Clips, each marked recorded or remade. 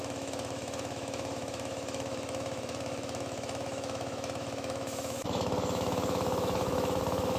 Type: remade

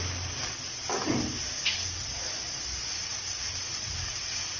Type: recorded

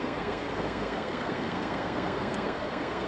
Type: remade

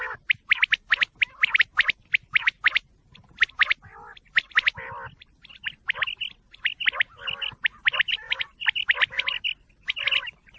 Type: recorded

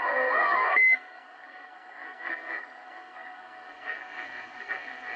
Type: remade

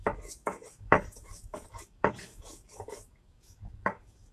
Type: remade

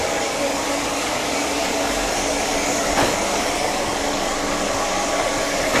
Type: remade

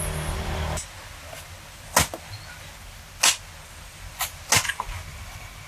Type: recorded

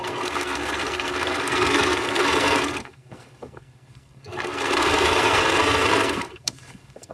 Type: remade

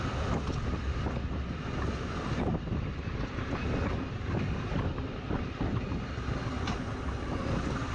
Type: recorded